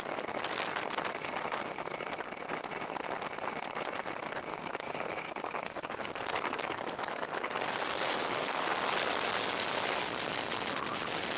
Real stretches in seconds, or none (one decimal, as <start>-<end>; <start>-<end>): 0.0-4.5; 8.7-11.4